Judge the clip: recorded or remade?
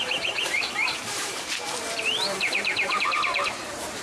remade